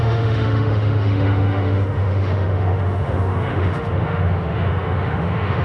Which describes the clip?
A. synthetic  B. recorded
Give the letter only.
A